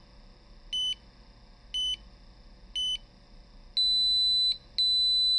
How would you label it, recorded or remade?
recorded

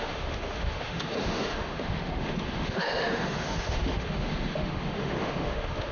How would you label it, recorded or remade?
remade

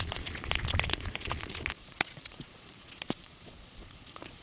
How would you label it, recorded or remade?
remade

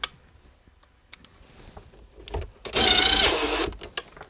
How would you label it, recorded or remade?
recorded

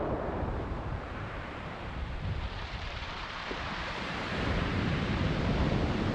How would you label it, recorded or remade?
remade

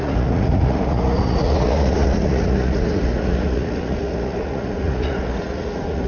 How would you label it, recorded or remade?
remade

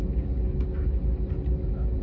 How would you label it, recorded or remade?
recorded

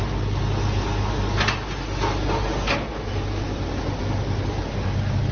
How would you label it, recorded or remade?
recorded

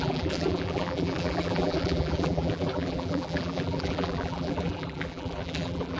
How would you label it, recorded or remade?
remade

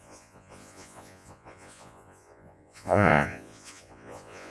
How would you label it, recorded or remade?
remade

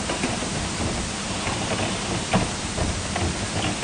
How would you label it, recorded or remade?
recorded